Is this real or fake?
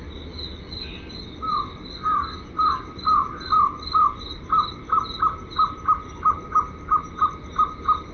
real